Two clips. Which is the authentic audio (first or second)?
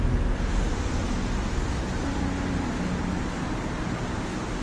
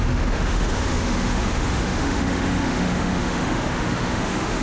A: first